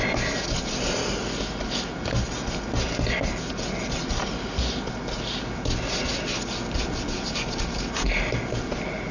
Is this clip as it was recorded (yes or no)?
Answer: yes